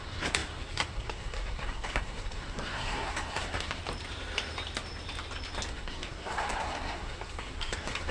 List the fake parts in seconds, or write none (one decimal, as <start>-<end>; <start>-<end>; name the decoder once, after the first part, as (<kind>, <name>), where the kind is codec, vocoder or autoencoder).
0.0-3.8 (codec, SNAC); 5.7-8.1